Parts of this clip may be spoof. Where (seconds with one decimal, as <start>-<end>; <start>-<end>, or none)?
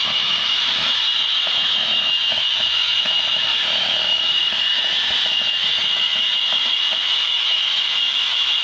0.0-8.6